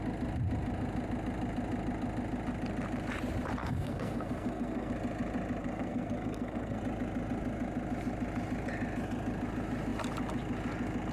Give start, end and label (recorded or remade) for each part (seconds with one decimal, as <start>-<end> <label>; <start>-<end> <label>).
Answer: 0.0-3.6 recorded; 3.6-4.9 remade; 4.9-5.6 recorded; 5.6-6.8 remade; 6.8-11.1 recorded